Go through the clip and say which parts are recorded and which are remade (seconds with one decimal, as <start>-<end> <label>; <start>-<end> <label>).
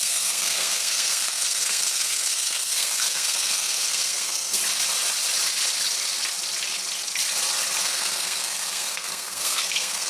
0.0-4.6 remade; 4.6-7.8 recorded; 7.8-10.1 remade